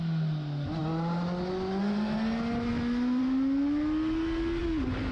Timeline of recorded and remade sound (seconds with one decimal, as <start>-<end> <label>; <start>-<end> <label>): 0.0-5.1 recorded